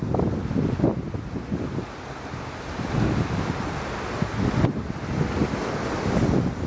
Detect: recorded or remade recorded